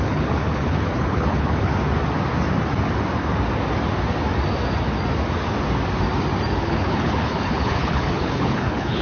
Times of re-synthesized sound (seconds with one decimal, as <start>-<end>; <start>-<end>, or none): 0.0-1.7; 6.5-9.0